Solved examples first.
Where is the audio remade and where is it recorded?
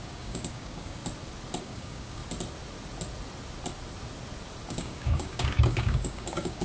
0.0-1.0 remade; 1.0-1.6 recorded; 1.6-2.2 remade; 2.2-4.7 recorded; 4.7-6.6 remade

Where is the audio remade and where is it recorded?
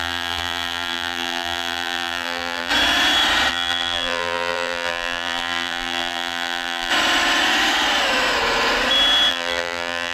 0.0-2.7 remade; 2.7-3.5 recorded; 3.5-6.9 remade; 6.9-9.3 recorded; 9.3-10.1 remade